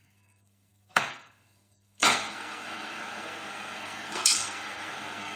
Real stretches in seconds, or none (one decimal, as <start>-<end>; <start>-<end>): none